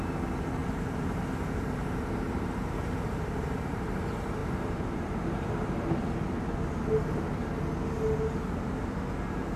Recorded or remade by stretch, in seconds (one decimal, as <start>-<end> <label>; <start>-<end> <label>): 0.0-0.6 recorded; 0.6-4.0 remade; 4.0-4.4 recorded; 4.4-5.5 remade; 5.5-9.6 recorded

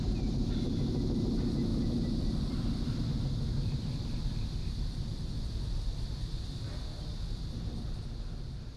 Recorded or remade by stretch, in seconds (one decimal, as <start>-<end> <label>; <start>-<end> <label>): 0.0-1.7 recorded; 1.7-3.0 remade; 3.0-8.8 recorded

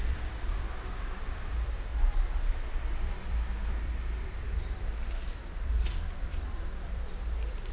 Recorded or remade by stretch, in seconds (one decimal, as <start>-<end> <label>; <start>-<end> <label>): 0.0-1.9 remade; 1.9-2.4 recorded; 2.4-7.7 remade

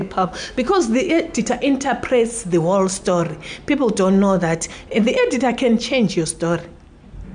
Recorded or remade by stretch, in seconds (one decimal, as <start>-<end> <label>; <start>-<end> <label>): 0.0-1.4 remade; 1.4-7.3 recorded